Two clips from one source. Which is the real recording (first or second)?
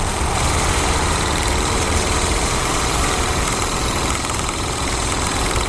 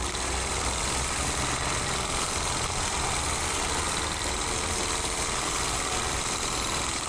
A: second